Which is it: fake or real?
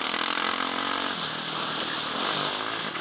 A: real